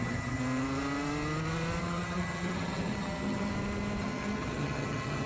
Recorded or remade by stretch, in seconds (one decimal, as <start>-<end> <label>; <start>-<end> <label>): 0.0-0.4 remade; 0.4-1.8 recorded; 1.8-3.5 remade; 3.5-4.0 recorded; 4.0-5.3 remade